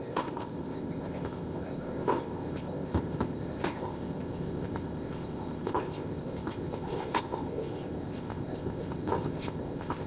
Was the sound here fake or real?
fake